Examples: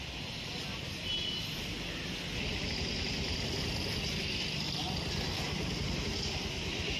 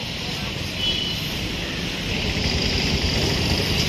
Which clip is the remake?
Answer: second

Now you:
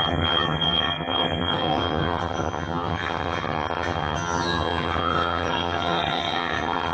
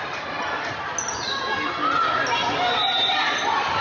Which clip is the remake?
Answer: first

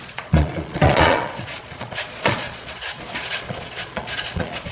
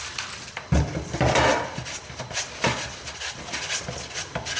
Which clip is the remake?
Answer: first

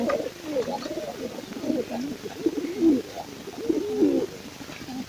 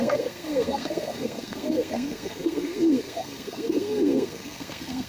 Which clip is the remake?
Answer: second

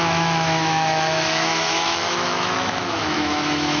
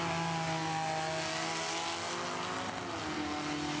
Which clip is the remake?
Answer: first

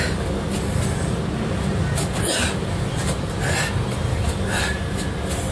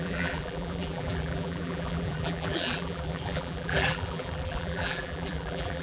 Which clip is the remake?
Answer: second